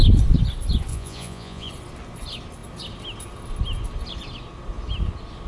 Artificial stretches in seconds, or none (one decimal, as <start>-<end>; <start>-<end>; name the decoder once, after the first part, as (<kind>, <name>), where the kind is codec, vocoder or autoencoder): 0.9-1.7 (vocoder, Vocos)